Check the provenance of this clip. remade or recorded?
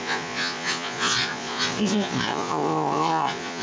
remade